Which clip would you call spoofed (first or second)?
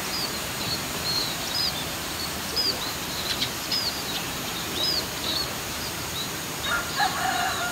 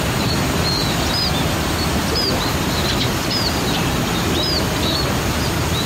first